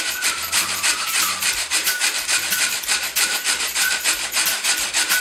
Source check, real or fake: fake